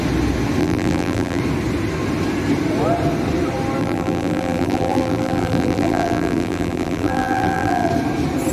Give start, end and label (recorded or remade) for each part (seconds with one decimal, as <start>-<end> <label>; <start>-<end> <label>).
0.0-0.6 recorded; 0.6-1.4 remade; 1.4-3.8 recorded; 3.8-7.9 remade; 7.9-8.5 recorded